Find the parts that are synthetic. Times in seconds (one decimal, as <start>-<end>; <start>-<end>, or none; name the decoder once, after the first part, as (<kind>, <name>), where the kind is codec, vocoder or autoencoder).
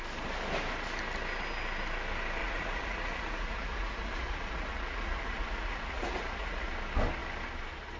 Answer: 2.4-6.7 (vocoder, Vocos)